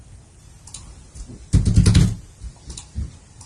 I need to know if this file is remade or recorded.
recorded